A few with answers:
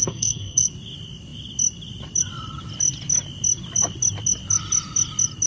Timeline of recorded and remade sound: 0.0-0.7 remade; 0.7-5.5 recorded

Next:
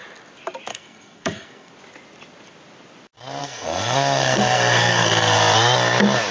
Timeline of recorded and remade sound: 0.0-0.7 recorded; 0.7-1.7 remade; 1.7-3.4 recorded; 3.4-5.4 remade; 5.4-6.3 recorded

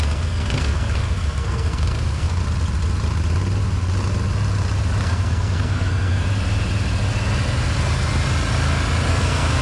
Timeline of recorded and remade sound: 0.0-2.4 remade; 2.4-5.0 recorded; 5.0-6.2 remade; 6.2-9.1 recorded; 9.1-9.6 remade

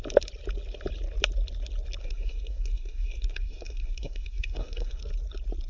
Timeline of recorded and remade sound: 0.0-2.0 recorded; 2.0-5.0 remade; 5.0-5.7 recorded

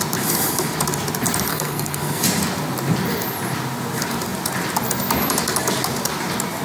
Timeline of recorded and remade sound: 0.0-1.5 recorded; 1.5-2.2 remade; 2.2-6.6 recorded

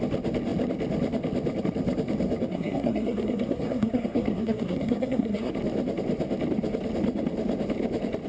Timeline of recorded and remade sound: 0.0-2.5 recorded; 2.5-5.5 remade; 5.5-8.3 recorded

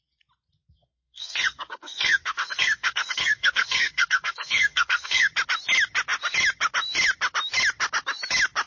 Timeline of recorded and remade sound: 0.0-0.6 recorded; 0.6-5.3 remade; 5.3-8.7 recorded

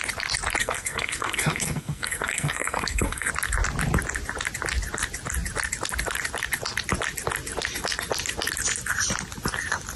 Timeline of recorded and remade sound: 0.0-0.6 recorded; 0.6-3.3 remade; 3.3-10.0 recorded